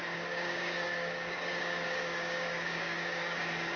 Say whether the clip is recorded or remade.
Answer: remade